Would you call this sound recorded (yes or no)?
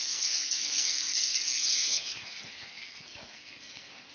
no